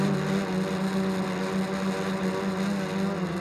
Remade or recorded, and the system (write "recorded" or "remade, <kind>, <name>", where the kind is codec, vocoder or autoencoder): recorded